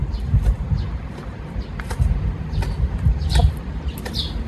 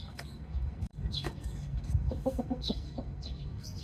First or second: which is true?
first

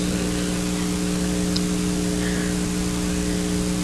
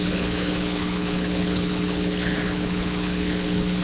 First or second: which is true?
first